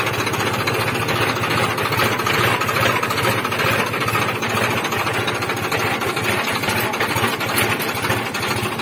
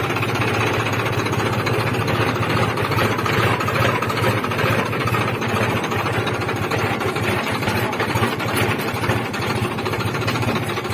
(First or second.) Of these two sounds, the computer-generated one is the second